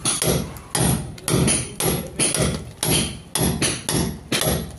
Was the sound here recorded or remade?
recorded